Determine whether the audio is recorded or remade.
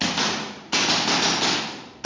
recorded